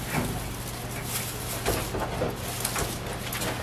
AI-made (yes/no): no